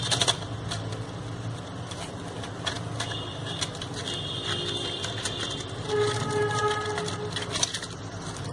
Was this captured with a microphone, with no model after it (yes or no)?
yes